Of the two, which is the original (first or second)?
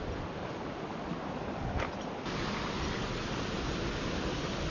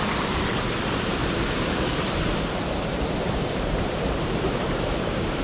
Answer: first